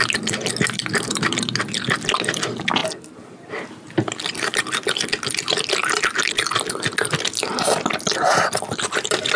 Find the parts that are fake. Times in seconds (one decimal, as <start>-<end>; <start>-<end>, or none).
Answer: none